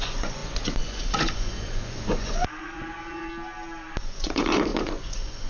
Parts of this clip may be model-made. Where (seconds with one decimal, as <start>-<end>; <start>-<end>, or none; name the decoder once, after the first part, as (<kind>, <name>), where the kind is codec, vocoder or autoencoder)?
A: 0.0-3.3 (vocoder, Vocos); 4.0-5.5